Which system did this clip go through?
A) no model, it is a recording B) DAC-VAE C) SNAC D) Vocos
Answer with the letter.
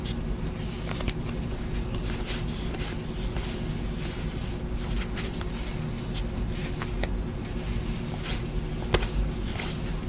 A